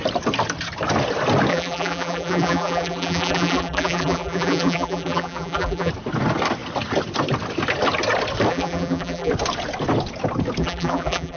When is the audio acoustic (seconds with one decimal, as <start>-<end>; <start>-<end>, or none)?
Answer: 0.0-1.5; 5.9-8.5; 9.3-10.6